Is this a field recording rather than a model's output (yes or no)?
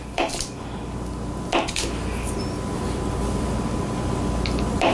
yes